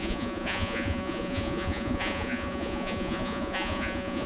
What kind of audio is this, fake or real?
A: fake